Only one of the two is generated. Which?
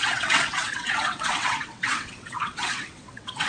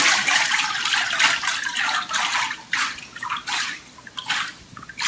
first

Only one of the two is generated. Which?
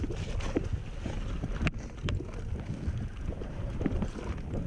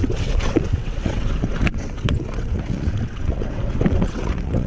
second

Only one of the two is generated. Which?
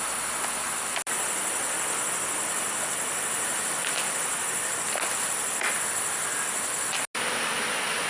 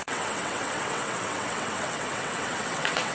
second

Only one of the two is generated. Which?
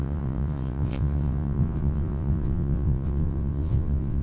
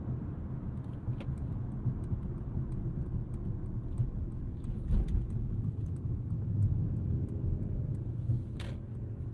first